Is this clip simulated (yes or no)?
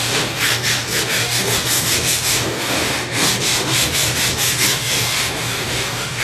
yes